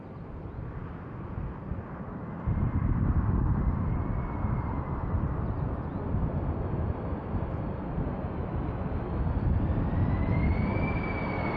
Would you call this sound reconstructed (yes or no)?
no